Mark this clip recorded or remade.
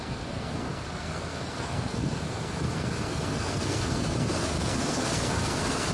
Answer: remade